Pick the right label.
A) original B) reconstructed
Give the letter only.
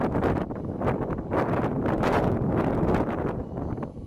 A